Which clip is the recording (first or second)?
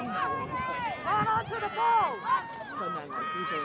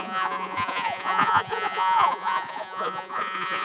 first